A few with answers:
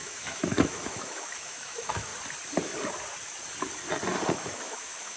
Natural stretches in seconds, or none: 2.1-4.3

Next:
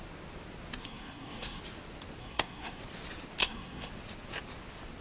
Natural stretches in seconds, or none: 0.0-0.8; 1.6-2.2; 2.8-3.4; 3.9-5.0

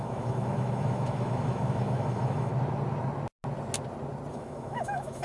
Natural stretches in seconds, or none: 2.5-4.3